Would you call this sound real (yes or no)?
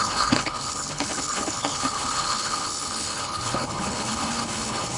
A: no